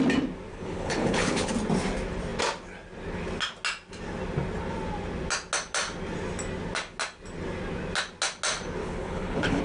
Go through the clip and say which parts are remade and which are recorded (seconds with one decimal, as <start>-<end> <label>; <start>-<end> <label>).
0.0-0.5 recorded; 0.5-1.5 remade; 1.5-8.8 recorded; 8.8-9.6 remade